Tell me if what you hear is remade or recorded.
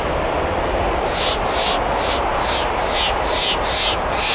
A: recorded